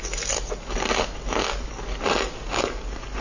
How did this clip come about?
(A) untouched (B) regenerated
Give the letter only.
A